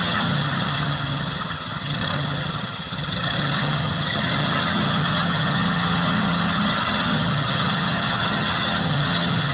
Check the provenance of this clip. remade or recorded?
remade